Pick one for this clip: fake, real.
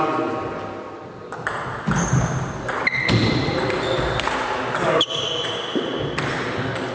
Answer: real